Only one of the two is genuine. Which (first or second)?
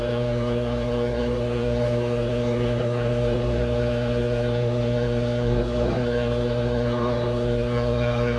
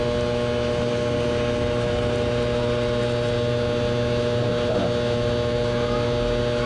second